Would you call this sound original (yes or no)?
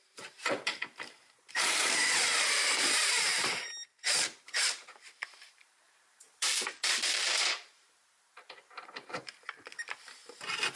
no